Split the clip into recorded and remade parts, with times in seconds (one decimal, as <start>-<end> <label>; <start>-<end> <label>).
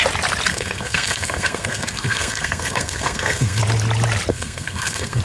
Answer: 0.0-0.5 recorded; 0.5-3.6 remade; 3.6-4.3 recorded; 4.3-5.2 remade